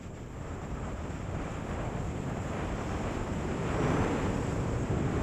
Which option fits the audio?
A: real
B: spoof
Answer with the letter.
B